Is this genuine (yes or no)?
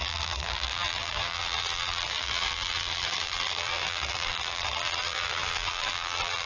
no